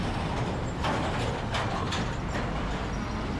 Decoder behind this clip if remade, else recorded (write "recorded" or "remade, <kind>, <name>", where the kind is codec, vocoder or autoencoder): recorded